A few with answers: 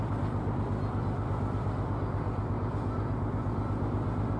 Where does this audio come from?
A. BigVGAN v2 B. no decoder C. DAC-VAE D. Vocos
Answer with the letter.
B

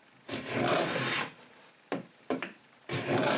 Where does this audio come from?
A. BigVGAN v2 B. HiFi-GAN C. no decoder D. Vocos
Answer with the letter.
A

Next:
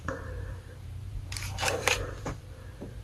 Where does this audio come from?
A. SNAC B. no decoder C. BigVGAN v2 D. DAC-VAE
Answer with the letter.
C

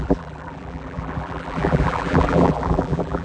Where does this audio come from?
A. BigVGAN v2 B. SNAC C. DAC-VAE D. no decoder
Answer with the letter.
A